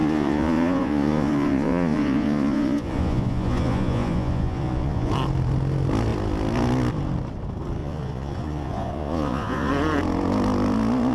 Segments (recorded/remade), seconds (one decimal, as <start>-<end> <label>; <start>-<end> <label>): 0.0-5.1 remade; 5.1-7.8 recorded; 7.8-9.7 remade; 9.7-11.1 recorded